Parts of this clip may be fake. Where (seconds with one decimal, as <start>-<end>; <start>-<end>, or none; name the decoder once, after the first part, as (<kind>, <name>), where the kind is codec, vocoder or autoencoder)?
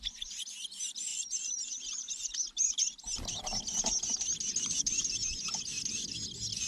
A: 1.1-2.2 (vocoder, BigVGAN v2)